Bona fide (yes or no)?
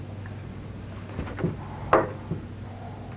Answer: yes